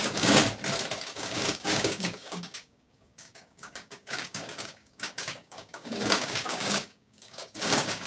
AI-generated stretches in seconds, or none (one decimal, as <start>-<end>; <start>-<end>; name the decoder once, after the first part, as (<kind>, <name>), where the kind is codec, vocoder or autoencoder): 0.0-0.4 (codec, DAC); 1.0-8.1